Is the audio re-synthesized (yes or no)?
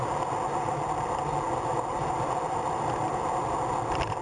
no